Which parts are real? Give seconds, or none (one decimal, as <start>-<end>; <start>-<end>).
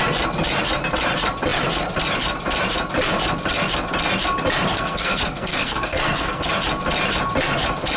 0.0-4.7; 6.5-8.0